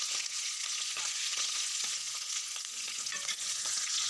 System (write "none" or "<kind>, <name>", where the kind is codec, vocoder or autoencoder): vocoder, Vocos